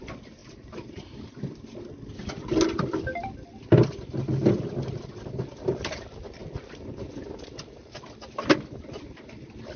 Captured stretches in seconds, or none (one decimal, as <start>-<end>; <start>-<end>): 0.0-0.4; 1.4-9.8